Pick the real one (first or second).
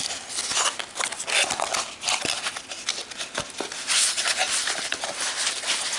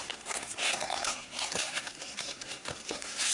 first